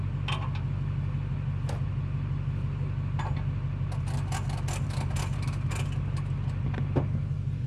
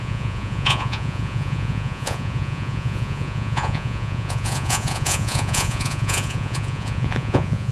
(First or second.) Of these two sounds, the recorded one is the first